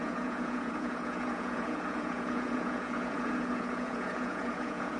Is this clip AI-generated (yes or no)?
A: yes